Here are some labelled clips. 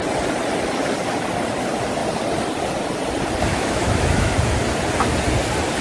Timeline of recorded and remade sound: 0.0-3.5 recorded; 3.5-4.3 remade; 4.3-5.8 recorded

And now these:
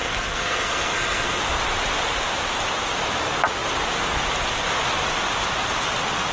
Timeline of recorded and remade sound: 0.0-1.4 remade; 1.4-6.3 recorded

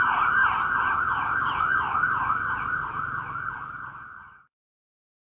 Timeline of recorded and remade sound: 0.0-5.2 recorded

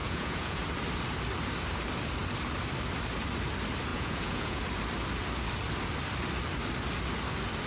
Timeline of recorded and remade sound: 0.0-0.6 remade; 0.6-3.9 recorded; 3.9-4.6 remade; 4.6-7.7 recorded